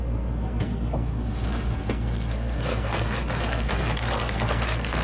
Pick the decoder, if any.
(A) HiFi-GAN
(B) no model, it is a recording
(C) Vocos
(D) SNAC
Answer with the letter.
D